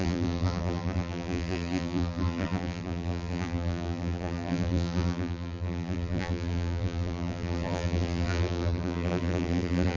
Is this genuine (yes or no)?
no